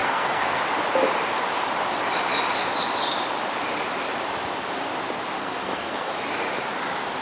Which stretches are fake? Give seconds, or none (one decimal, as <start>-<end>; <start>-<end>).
0.0-0.6; 5.4-6.1